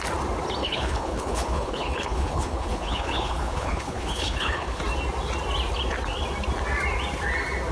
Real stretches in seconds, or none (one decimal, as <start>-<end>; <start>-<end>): 0.0-0.6; 4.8-7.7